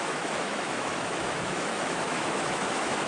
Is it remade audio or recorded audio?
remade